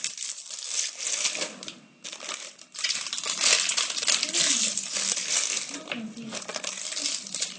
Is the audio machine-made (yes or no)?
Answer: no